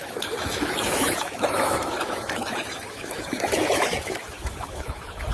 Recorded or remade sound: remade